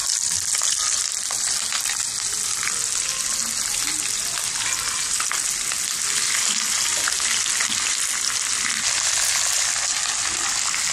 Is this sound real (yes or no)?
yes